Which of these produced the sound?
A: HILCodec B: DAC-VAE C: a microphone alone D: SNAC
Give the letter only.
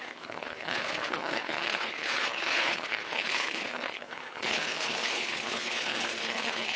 A